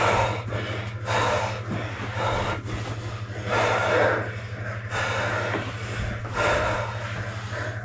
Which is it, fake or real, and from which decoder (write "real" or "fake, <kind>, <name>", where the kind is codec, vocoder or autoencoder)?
real